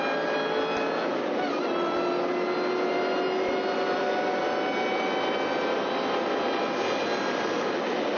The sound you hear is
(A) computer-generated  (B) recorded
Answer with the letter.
B